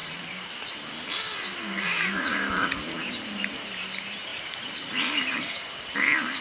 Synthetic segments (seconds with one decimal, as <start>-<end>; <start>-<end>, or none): 0.0-0.7; 1.9-2.5; 4.3-5.2